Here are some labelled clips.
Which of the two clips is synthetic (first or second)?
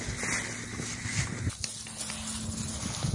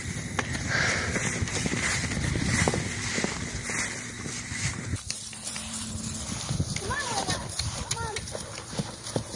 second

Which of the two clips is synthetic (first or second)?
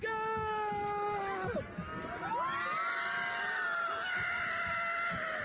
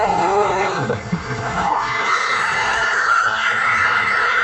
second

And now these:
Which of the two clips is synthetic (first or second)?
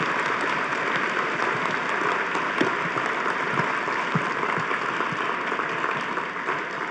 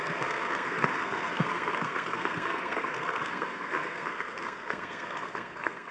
second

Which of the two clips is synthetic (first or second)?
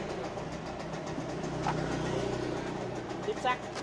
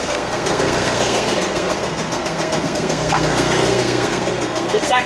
second